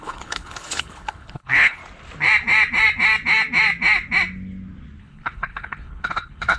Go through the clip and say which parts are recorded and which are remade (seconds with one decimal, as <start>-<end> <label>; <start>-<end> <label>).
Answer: 0.0-1.8 remade; 1.8-5.0 recorded; 5.0-6.6 remade